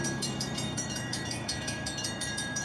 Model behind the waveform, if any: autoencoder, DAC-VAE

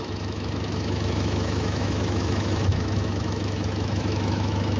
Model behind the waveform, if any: autoencoder, DAC-VAE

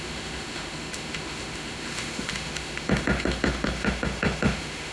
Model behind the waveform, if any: autoencoder, DAC-VAE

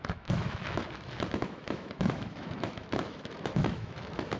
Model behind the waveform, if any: autoencoder, DAC-VAE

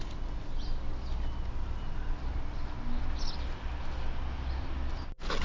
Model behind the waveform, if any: none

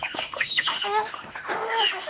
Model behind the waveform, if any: autoencoder, DAC-VAE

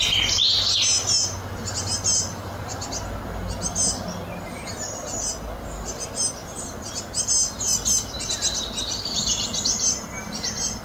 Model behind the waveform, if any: none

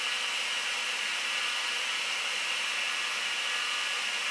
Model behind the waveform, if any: none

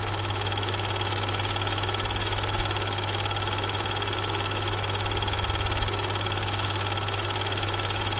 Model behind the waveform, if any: autoencoder, DAC-VAE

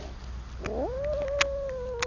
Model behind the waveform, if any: none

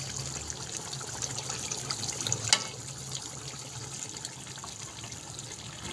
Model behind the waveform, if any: none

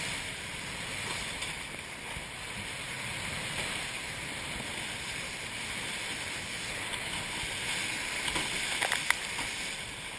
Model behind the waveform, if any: none